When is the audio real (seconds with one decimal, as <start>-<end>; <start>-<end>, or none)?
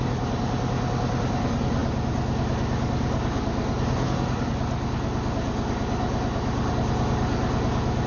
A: 0.0-8.1